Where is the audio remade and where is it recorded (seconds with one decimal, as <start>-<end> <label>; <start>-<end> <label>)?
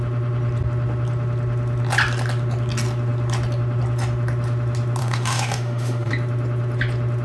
0.0-5.0 recorded; 5.0-6.1 remade; 6.1-7.2 recorded